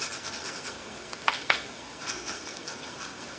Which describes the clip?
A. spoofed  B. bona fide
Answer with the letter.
A